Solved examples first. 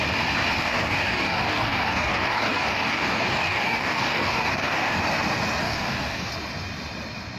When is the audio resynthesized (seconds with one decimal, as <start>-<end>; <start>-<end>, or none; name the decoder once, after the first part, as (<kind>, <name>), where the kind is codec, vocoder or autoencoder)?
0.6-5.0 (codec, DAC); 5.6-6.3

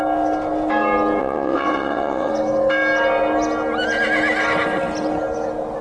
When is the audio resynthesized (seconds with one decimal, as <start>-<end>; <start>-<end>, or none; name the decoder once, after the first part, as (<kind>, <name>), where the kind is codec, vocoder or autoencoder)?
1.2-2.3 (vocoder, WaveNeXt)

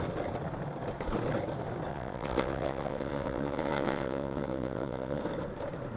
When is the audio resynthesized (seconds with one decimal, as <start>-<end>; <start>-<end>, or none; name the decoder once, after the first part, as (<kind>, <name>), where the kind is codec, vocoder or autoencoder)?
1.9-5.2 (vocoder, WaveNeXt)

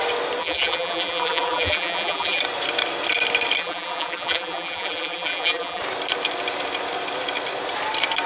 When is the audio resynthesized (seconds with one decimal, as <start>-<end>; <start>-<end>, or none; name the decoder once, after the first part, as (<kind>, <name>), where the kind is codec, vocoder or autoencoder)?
0.4-2.4 (vocoder, BigVGAN v2); 3.6-5.8

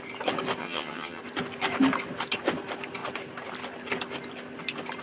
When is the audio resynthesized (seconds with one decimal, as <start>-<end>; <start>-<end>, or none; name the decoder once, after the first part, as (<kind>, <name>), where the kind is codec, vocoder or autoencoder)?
0.6-1.2 (vocoder, HiFi-GAN)

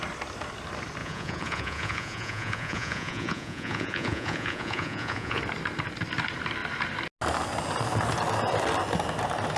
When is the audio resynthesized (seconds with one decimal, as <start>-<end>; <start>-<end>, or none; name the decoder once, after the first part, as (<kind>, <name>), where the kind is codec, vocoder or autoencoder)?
1.0-5.4 (vocoder, Vocos)

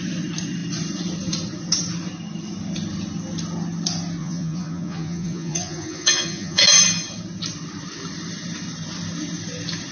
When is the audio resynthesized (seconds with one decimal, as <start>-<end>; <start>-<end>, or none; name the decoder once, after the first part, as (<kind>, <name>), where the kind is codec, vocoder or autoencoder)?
4.2-6.6 (vocoder, Vocos)